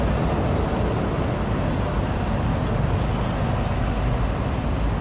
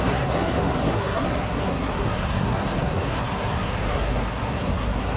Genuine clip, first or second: first